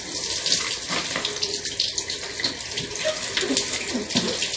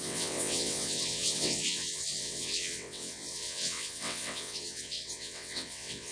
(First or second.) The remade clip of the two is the second